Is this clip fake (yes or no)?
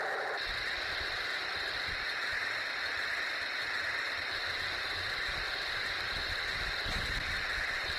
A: yes